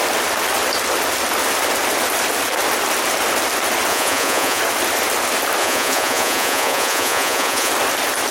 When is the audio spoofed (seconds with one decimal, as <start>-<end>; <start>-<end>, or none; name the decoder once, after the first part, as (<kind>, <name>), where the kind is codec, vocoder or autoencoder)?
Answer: 3.9-4.6 (vocoder, Vocos); 5.6-7.7